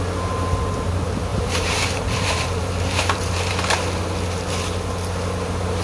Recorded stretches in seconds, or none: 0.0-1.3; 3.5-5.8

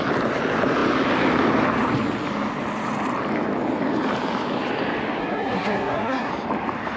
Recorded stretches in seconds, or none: 0.0-5.2; 6.3-7.0